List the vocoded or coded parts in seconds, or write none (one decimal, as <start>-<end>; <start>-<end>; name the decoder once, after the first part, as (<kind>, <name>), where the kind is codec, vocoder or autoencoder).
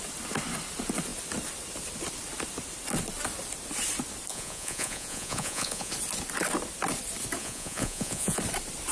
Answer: 4.3-5.9 (vocoder, Vocos); 7.4-8.4